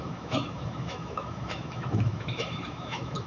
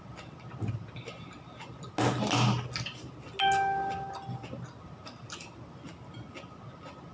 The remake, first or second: first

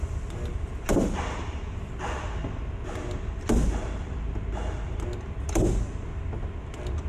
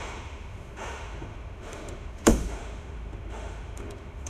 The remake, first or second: second